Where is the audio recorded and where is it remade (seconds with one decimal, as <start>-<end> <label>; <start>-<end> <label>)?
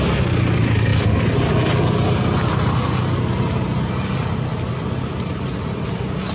0.0-6.3 recorded